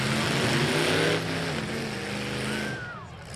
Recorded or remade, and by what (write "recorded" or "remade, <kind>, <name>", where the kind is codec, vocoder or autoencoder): recorded